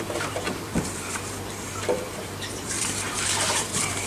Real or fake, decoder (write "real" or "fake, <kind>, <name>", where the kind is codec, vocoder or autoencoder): fake, vocoder, BigVGAN v2